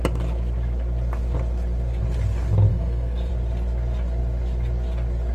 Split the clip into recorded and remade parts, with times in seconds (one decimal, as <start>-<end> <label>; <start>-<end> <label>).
0.0-2.7 recorded; 2.7-3.3 remade; 3.3-5.3 recorded